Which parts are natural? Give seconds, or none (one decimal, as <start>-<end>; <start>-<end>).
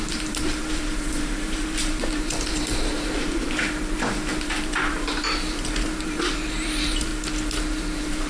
7.1-7.8